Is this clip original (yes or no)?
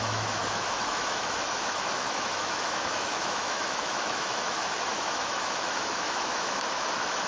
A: no